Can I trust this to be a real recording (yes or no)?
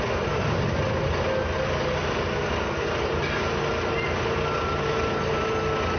yes